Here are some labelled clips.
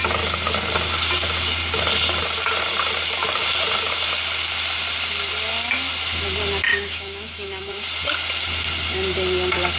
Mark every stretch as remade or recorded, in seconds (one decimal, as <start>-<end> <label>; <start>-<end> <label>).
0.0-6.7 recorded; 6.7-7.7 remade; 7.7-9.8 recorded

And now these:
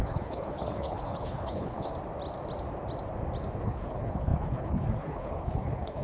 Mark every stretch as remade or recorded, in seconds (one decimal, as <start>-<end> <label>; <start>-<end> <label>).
0.0-1.9 remade; 1.9-3.6 recorded; 3.6-6.0 remade

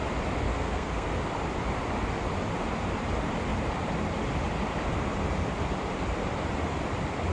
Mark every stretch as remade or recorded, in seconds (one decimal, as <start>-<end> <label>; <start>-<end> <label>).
0.0-0.5 recorded; 0.5-1.1 remade; 1.1-7.3 recorded

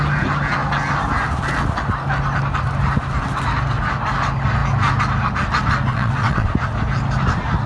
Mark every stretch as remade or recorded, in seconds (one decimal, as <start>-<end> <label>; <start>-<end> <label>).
0.0-5.9 recorded; 5.9-6.5 remade; 6.5-7.7 recorded